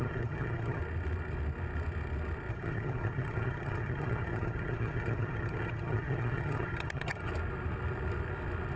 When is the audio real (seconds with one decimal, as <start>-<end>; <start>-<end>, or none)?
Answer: 0.8-2.5; 7.3-8.8